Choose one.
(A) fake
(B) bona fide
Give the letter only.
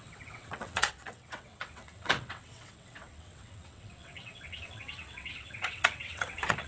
A